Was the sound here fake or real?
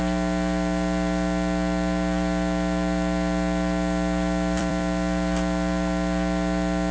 fake